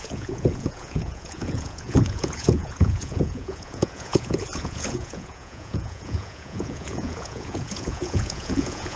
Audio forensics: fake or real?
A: fake